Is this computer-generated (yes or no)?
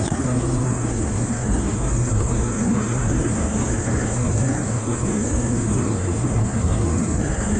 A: yes